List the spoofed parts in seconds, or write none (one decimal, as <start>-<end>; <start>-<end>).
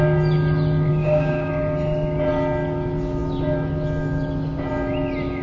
0.9-1.5